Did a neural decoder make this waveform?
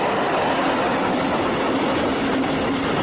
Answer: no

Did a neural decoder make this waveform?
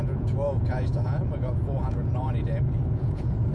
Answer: yes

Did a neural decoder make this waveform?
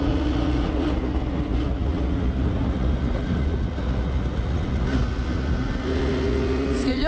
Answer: yes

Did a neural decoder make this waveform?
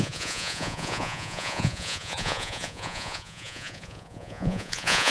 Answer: yes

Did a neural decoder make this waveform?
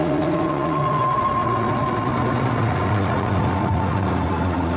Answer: yes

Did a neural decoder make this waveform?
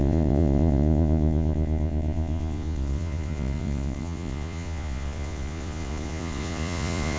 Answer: yes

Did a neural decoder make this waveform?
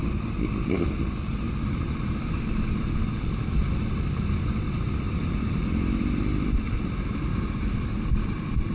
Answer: no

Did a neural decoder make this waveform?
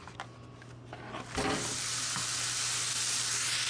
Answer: no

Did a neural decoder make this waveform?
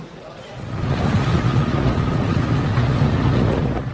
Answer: yes